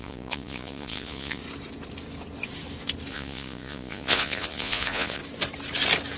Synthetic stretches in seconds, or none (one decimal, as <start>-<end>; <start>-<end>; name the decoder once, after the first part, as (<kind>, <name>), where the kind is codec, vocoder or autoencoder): 0.0-1.4 (vocoder, Vocos); 3.1-5.2